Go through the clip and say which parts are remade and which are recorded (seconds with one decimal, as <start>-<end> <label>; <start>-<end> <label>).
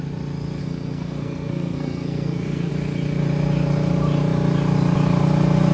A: 0.0-0.6 recorded; 0.6-2.7 remade; 2.7-5.7 recorded